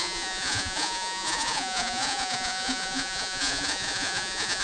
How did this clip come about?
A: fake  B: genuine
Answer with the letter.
A